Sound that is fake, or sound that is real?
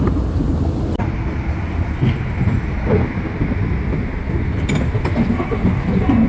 real